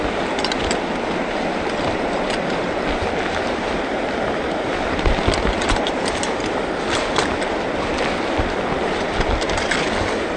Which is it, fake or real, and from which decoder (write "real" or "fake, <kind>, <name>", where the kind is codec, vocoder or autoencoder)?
real